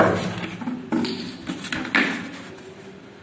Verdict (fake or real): real